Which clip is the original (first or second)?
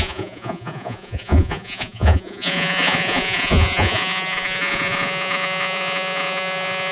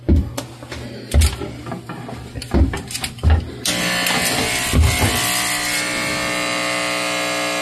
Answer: second